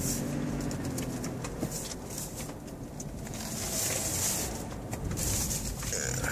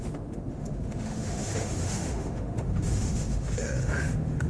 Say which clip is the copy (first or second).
second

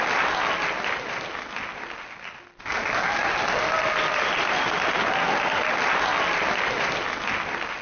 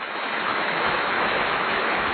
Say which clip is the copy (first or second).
second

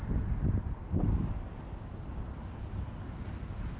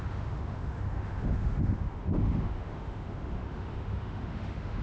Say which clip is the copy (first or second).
second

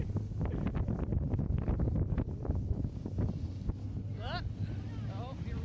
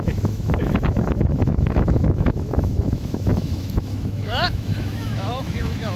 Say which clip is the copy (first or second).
second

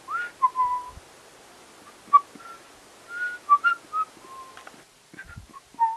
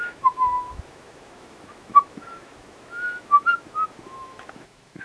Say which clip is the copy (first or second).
second